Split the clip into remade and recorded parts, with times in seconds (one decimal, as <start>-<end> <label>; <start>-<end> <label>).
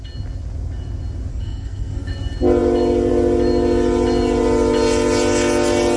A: 0.0-1.3 recorded; 1.3-2.1 remade; 2.1-6.0 recorded